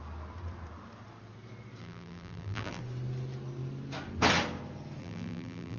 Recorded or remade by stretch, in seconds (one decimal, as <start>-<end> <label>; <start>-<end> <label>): 0.0-1.8 recorded; 1.8-2.8 remade; 2.8-5.0 recorded; 5.0-5.8 remade